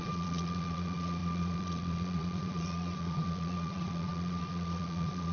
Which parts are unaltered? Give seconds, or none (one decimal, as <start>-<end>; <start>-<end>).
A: none